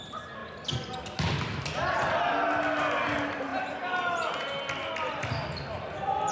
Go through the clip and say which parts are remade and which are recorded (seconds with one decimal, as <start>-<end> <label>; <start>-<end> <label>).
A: 0.0-6.3 recorded

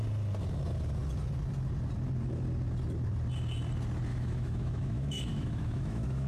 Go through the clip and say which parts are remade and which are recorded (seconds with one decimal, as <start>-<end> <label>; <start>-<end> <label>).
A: 0.0-4.1 recorded; 4.1-6.3 remade

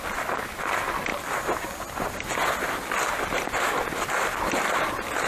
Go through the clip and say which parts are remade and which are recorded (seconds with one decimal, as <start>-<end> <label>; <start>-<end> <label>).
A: 0.0-5.3 recorded

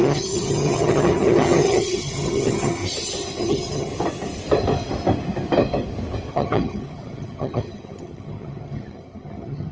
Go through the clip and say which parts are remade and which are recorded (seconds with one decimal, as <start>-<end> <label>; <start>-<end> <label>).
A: 0.0-2.8 remade; 2.8-3.4 recorded; 3.4-3.9 remade; 3.9-6.3 recorded; 6.3-9.7 remade

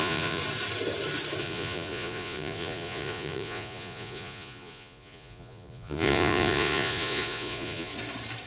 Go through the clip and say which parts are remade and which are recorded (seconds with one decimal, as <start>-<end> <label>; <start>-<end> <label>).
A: 0.0-0.4 remade; 0.4-1.4 recorded; 1.4-7.9 remade; 7.9-8.5 recorded

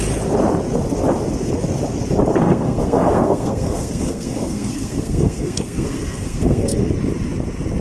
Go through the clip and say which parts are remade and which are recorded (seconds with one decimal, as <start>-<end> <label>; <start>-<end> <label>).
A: 0.0-2.3 recorded; 2.3-6.9 remade; 6.9-7.8 recorded